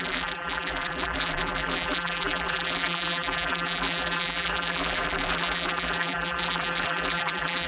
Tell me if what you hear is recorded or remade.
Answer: remade